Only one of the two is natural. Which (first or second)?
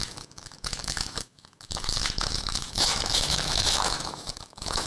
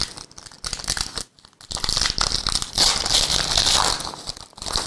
second